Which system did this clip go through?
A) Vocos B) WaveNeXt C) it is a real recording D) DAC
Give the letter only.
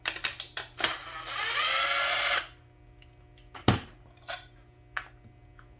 C